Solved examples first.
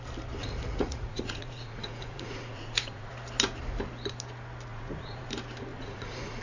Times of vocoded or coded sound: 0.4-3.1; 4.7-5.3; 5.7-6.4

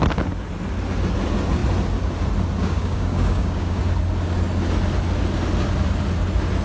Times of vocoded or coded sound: 2.6-3.8